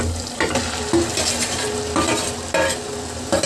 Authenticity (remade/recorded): recorded